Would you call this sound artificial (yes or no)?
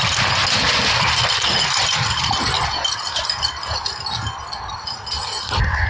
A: no